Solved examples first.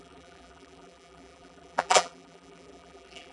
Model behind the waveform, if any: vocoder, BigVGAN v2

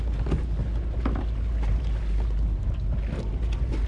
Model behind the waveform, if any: none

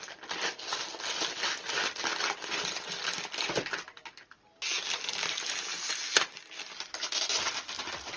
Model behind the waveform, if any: none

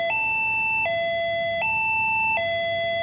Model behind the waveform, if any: none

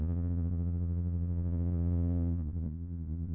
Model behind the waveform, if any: vocoder, Vocos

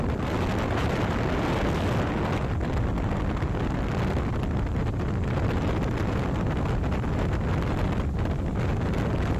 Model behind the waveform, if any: none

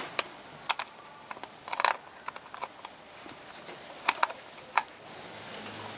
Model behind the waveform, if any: none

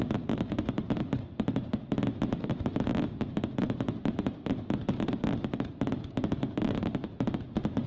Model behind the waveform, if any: vocoder, BigVGAN v2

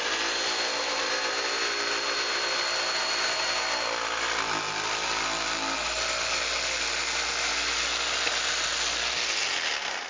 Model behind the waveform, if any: none